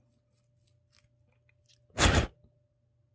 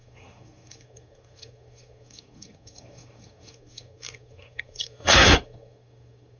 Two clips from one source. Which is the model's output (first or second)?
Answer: second